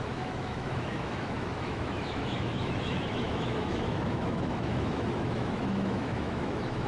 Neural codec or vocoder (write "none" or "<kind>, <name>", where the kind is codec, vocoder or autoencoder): autoencoder, DAC-VAE